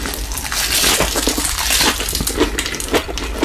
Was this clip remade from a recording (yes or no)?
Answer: no